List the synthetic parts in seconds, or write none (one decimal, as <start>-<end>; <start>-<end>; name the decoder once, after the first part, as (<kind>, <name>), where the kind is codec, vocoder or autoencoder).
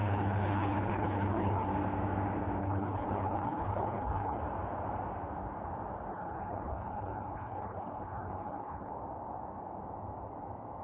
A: 0.0-1.7 (codec, HILCodec); 2.6-4.4; 6.1-8.9